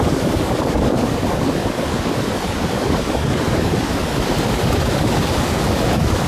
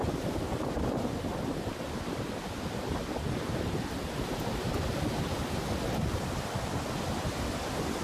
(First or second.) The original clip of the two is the second